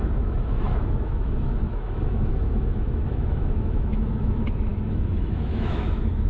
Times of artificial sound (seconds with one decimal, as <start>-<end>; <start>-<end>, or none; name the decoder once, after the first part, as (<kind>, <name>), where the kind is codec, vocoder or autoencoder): 0.0-6.3 (autoencoder, DAC-VAE)